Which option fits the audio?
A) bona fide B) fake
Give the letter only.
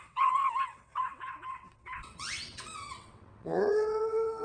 B